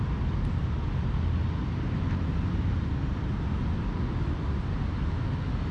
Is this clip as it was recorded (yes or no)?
yes